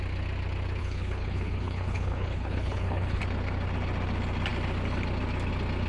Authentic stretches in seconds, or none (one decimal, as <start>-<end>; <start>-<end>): 0.0-0.8; 3.2-5.9